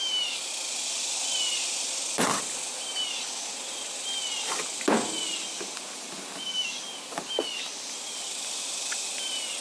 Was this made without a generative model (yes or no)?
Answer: yes